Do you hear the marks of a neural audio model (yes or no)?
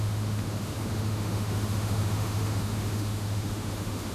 yes